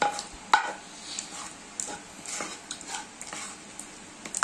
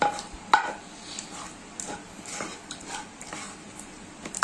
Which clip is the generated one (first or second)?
second